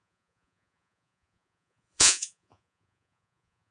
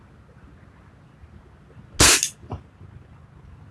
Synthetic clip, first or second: first